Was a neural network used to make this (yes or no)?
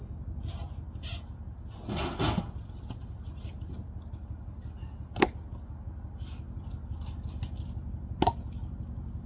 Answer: no